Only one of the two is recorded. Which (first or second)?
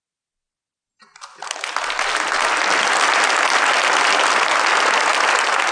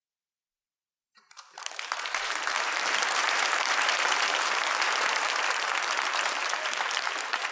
first